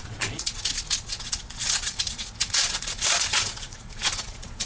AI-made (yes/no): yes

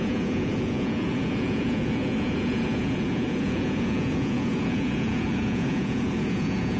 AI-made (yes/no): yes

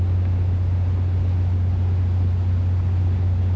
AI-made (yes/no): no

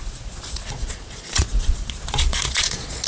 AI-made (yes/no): yes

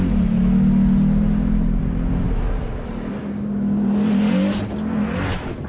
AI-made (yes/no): no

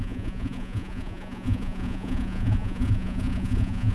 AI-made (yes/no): yes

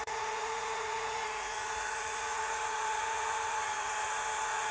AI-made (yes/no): yes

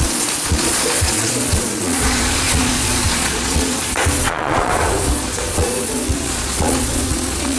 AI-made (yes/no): yes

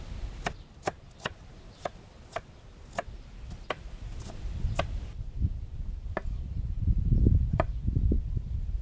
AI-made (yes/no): no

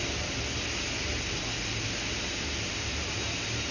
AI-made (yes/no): no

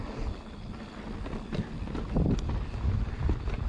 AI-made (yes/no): no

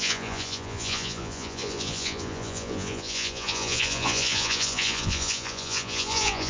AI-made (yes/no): yes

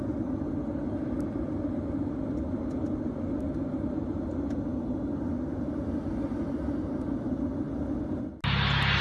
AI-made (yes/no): no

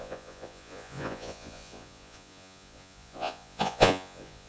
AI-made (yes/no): yes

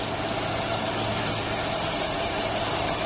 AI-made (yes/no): no